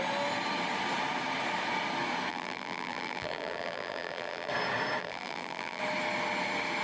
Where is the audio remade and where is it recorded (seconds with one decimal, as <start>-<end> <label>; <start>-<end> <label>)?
0.0-2.3 recorded; 2.3-4.5 remade; 4.5-5.0 recorded; 5.0-5.8 remade; 5.8-6.8 recorded